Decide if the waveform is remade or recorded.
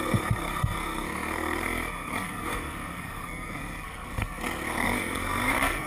remade